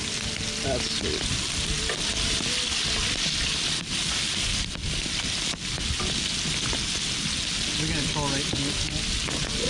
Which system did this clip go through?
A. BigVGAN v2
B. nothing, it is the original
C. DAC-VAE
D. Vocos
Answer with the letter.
B